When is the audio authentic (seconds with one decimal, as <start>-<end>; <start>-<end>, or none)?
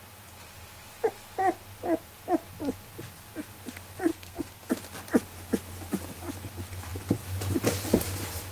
0.0-4.1; 4.7-8.5